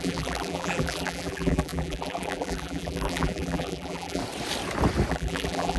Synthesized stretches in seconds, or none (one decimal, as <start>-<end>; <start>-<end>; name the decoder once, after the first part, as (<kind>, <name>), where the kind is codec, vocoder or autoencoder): 0.0-4.2 (vocoder, BigVGAN v2); 5.1-5.8